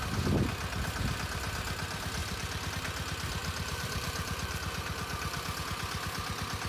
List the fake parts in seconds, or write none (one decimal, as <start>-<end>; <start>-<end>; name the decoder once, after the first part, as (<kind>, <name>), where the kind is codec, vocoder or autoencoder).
2.2-2.7 (vocoder, BigVGAN v2); 3.4-5.6